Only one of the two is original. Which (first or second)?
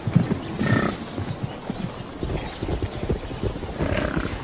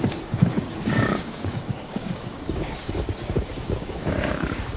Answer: first